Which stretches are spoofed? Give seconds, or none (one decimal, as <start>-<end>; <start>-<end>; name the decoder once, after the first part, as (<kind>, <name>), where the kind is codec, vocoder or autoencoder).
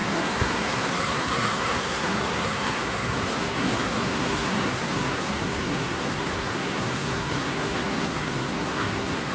0.0-9.3 (codec, SNAC)